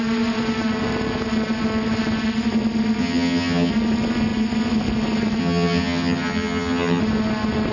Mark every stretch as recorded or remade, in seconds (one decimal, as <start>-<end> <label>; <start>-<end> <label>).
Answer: 0.0-3.0 recorded; 3.0-3.7 remade; 3.7-5.4 recorded; 5.4-7.0 remade; 7.0-7.7 recorded